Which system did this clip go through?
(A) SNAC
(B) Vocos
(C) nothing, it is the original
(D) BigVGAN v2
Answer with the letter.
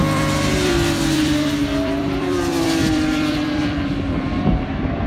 D